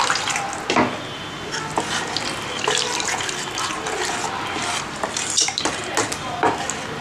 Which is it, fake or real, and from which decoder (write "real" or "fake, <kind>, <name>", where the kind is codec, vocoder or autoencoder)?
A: real